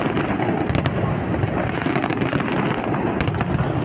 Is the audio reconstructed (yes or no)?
no